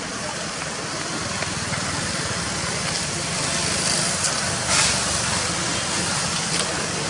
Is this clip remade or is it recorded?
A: recorded